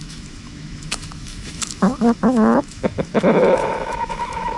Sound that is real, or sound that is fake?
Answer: fake